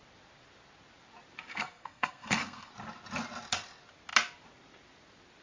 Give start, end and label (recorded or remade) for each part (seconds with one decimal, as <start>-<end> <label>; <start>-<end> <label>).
0.0-1.5 recorded; 1.5-2.7 remade; 2.7-5.4 recorded